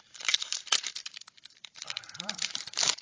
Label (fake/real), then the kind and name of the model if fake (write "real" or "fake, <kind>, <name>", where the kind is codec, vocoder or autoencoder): fake, vocoder, BigVGAN v2